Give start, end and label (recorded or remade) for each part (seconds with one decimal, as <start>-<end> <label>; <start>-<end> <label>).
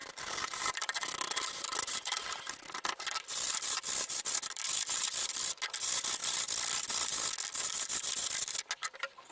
0.0-5.2 remade; 5.2-6.2 recorded; 6.2-7.1 remade; 7.1-9.3 recorded